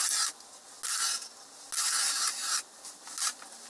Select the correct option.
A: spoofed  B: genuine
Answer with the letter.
B